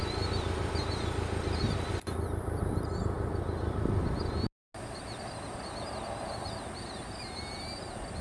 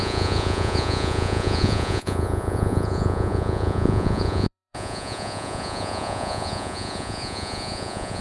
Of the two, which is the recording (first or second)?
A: first